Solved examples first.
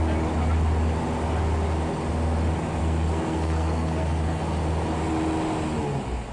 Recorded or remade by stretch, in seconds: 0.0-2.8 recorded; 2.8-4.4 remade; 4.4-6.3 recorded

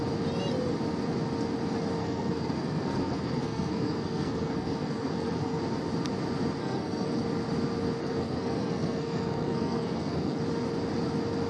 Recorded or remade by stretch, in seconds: 0.0-2.0 recorded; 2.0-5.6 remade; 5.6-6.6 recorded; 6.6-7.2 remade; 7.2-8.0 recorded; 8.0-10.4 remade; 10.4-11.5 recorded

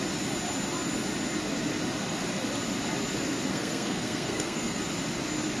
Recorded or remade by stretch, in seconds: 0.0-3.5 recorded; 3.5-4.8 remade; 4.8-5.6 recorded

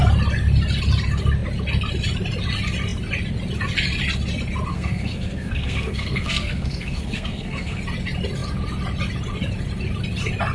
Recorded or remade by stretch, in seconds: 0.0-4.7 recorded; 4.7-7.8 remade; 7.8-10.5 recorded

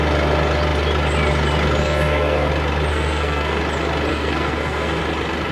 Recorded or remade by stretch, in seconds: 0.0-1.8 recorded; 1.8-2.5 remade; 2.5-2.9 recorded; 2.9-3.6 remade; 3.6-4.1 recorded; 4.1-5.0 remade; 5.0-5.5 recorded

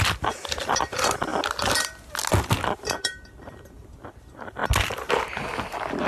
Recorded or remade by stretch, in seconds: 0.0-6.1 recorded

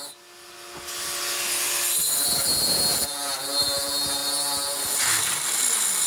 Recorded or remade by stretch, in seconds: 0.0-6.1 recorded